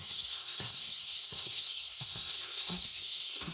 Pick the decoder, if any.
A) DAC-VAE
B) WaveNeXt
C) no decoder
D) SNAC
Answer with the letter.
D